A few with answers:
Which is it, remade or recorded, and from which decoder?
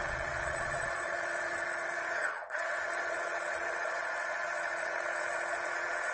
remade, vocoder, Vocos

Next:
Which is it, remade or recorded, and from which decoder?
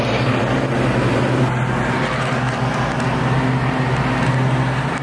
recorded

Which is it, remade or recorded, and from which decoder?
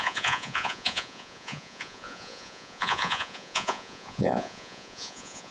remade, vocoder, Vocos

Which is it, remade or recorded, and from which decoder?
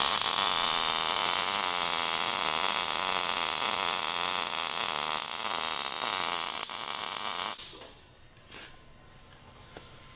recorded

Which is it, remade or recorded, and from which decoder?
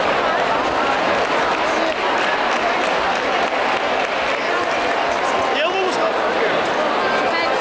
recorded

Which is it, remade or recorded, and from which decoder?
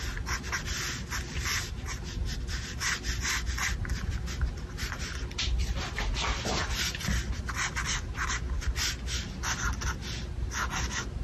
recorded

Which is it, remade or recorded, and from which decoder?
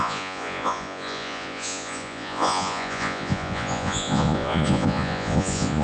remade, vocoder, Vocos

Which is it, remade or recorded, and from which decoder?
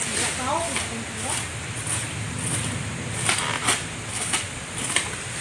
recorded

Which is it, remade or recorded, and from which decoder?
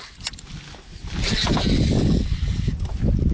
recorded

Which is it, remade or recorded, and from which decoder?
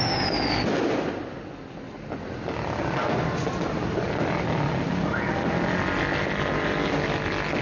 recorded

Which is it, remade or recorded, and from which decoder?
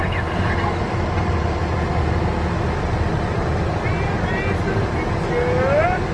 recorded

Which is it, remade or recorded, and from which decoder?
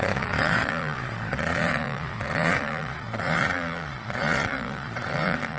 remade, vocoder, Vocos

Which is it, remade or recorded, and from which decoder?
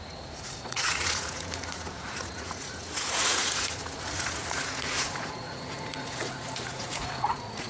remade, vocoder, Vocos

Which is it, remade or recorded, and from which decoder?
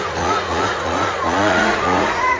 remade, vocoder, Vocos